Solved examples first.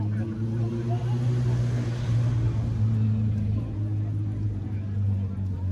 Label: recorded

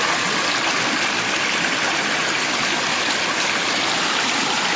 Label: remade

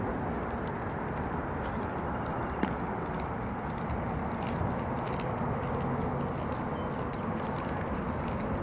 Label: recorded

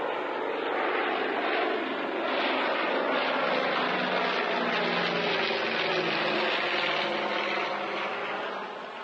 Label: recorded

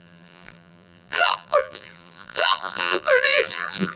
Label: remade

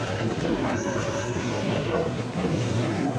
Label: remade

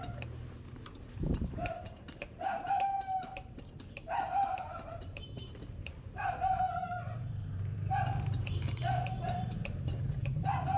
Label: remade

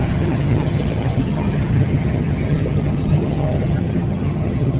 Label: remade